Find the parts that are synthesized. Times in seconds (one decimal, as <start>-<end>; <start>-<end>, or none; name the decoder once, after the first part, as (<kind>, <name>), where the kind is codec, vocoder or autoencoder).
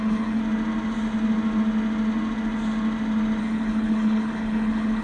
0.0-0.4 (codec, HILCodec); 3.4-5.0